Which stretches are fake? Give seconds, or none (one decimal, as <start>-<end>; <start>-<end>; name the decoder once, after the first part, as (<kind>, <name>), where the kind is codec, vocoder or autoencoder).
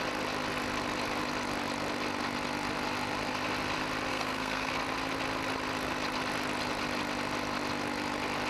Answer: 4.1-4.7 (codec, SNAC)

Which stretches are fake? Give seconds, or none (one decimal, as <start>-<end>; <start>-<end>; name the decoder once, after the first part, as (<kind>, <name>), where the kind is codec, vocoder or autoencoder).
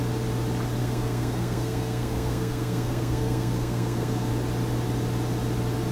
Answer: 0.8-4.3 (codec, SNAC)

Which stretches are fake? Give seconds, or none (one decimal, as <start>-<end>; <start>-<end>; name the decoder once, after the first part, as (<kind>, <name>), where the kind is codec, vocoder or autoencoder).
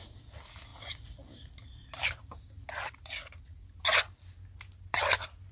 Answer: none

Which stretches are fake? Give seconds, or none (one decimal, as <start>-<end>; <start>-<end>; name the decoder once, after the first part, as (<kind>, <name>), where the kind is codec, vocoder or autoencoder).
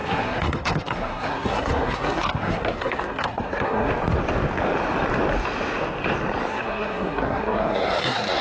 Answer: 0.0-3.9 (codec, SNAC); 6.5-8.4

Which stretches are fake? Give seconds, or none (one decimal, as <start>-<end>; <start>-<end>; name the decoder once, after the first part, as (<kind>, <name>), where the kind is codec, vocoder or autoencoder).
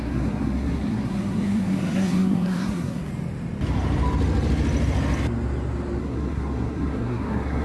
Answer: 0.0-3.1 (codec, SNAC); 6.0-7.6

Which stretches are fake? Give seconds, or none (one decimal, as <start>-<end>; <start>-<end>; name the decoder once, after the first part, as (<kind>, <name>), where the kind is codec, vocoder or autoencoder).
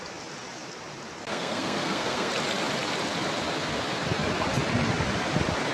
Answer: 1.3-2.3 (codec, SNAC)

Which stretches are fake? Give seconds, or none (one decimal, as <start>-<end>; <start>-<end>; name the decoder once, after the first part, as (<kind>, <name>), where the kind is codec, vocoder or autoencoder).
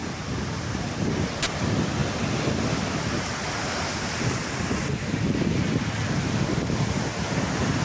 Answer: none